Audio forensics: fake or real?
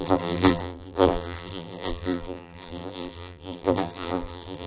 fake